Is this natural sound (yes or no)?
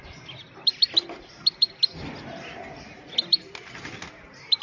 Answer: yes